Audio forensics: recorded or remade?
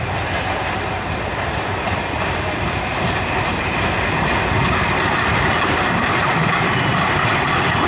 remade